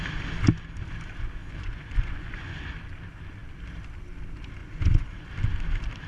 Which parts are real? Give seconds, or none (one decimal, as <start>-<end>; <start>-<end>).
0.0-1.4; 2.6-4.6; 5.3-6.1